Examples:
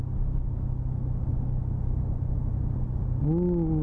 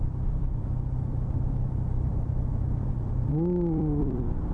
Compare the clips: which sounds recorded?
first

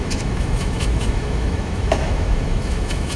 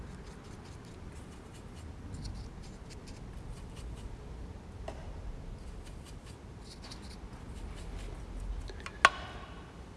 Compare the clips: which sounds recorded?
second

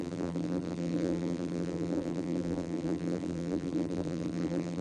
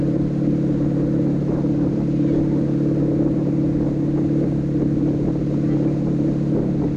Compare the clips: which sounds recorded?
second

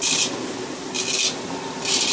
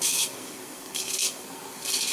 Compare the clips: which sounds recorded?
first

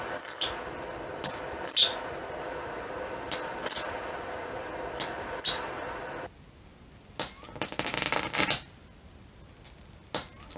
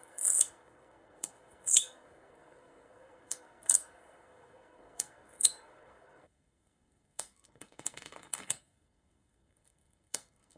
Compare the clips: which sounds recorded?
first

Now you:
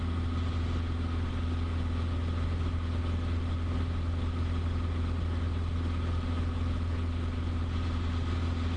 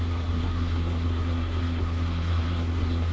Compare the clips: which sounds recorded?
first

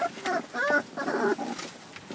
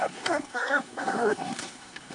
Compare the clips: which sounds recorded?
first